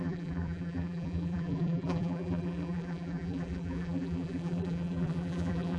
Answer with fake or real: fake